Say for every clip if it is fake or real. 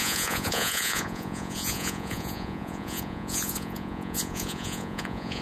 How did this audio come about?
fake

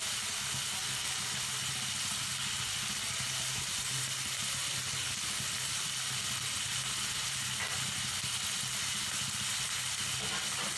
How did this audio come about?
real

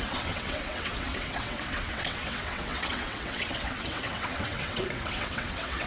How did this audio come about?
fake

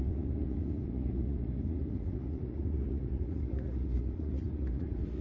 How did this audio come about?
fake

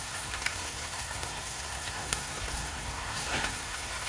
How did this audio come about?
fake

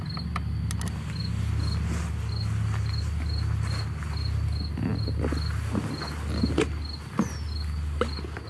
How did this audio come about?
real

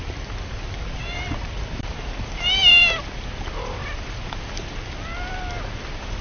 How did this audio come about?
fake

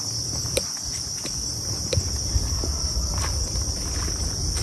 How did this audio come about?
real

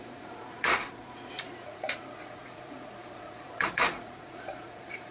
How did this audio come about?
fake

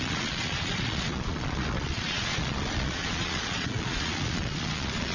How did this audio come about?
fake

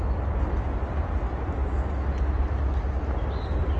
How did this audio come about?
real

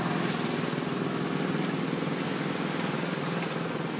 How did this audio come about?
real